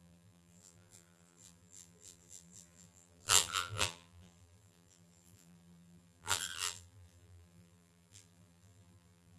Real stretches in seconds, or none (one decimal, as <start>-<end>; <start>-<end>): none